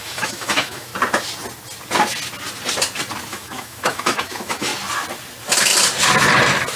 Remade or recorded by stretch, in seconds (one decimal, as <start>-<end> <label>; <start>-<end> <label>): 0.0-0.9 remade; 0.9-3.3 recorded; 3.3-4.7 remade; 4.7-6.8 recorded